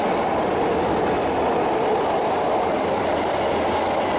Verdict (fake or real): real